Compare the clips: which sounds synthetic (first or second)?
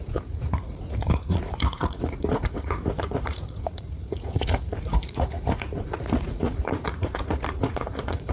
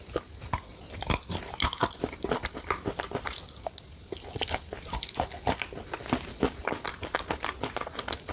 first